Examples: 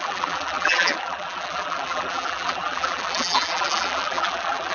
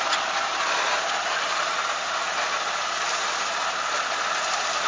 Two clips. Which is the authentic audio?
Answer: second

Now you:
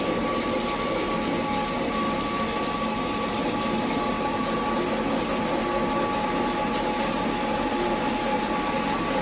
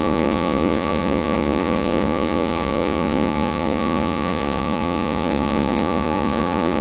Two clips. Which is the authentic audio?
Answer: first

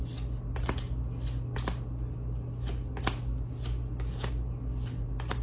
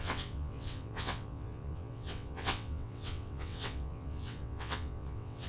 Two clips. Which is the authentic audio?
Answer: first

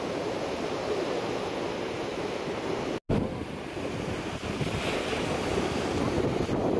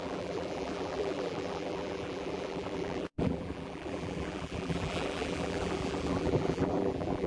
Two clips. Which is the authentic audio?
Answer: first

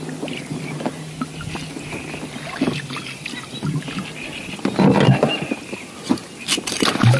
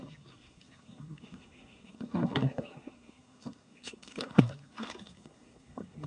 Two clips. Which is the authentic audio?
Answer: first